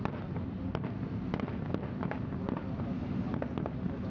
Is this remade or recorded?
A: recorded